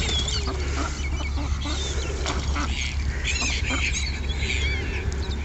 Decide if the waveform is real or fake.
real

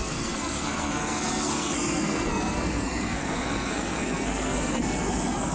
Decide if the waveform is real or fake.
fake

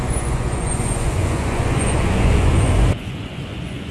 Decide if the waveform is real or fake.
fake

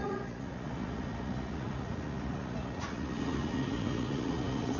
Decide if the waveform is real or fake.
fake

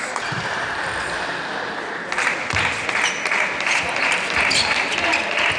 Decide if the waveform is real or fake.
real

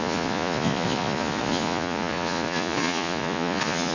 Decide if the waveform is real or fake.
fake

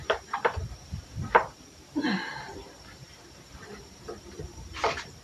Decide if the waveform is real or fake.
fake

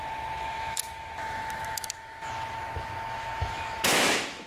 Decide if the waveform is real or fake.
fake